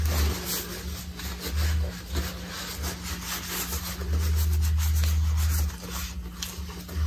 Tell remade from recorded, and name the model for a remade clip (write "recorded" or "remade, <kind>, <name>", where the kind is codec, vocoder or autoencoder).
recorded